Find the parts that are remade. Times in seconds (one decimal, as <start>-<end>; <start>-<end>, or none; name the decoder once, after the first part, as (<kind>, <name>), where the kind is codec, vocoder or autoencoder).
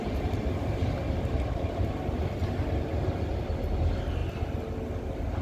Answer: none